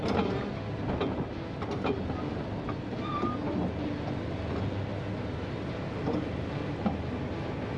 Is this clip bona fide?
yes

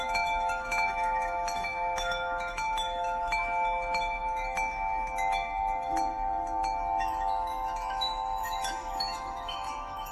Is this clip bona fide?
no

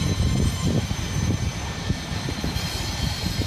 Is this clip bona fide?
yes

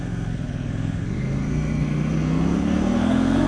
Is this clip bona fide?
no